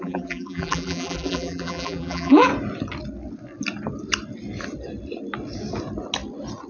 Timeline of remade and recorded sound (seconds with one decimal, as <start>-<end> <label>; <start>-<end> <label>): 0.0-2.5 remade; 2.5-6.7 recorded